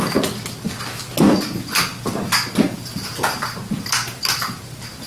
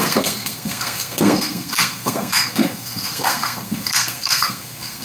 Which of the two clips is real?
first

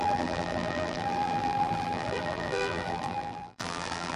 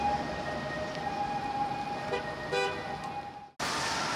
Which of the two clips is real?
second